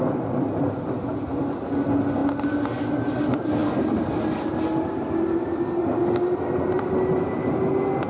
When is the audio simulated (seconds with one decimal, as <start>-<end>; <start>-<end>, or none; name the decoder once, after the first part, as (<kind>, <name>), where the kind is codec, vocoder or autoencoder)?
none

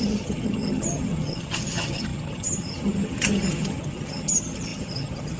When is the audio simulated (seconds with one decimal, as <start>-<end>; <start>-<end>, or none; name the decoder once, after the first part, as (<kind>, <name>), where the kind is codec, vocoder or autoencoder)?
0.0-5.4 (vocoder, HiFi-GAN)

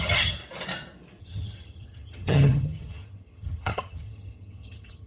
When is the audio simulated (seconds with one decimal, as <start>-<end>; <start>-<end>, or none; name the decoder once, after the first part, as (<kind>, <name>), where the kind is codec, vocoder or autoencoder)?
0.0-0.4 (vocoder, HiFi-GAN); 1.2-5.1

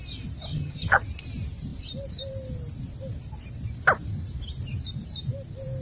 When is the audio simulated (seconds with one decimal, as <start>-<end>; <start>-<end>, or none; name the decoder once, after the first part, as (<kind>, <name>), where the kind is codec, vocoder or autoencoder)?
0.5-1.0 (vocoder, HiFi-GAN)

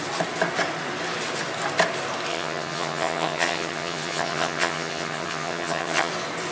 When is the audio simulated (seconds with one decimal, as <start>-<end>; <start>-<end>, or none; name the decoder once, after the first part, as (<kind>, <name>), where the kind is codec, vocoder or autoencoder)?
2.3-6.1 (vocoder, HiFi-GAN)

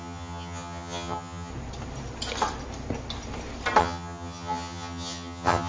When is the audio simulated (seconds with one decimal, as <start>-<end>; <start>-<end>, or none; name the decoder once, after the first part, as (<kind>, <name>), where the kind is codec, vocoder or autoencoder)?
0.0-1.5 (vocoder, HiFi-GAN); 3.8-5.7

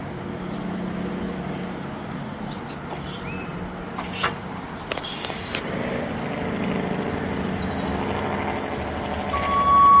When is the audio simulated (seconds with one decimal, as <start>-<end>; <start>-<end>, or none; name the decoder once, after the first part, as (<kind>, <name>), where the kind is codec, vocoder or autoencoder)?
none

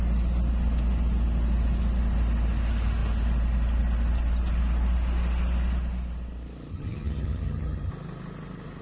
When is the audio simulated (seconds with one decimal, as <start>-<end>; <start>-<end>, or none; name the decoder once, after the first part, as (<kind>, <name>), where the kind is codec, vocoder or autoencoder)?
6.7-7.9 (vocoder, HiFi-GAN)